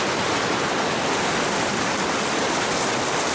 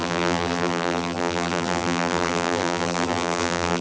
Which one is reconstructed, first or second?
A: second